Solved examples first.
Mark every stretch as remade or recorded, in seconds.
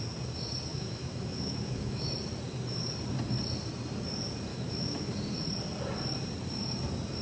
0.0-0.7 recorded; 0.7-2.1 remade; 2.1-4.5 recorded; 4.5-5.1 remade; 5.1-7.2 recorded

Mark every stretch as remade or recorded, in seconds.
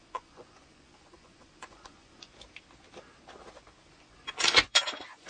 0.0-2.3 remade; 2.3-3.8 recorded; 3.8-5.3 remade